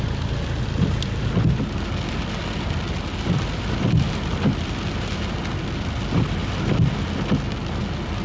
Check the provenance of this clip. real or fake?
real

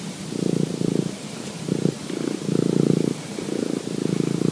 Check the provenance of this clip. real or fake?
real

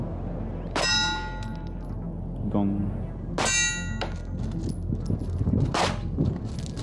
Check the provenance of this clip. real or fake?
real